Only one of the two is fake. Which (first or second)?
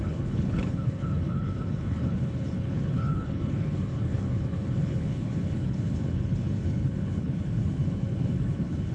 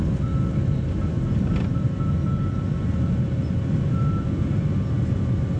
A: first